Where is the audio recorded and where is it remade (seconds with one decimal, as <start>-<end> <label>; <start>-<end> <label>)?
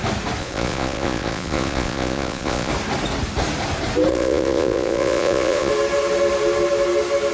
0.0-0.4 recorded; 0.4-2.7 remade; 2.7-4.1 recorded; 4.1-5.7 remade; 5.7-7.3 recorded